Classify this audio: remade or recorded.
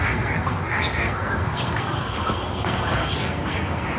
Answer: remade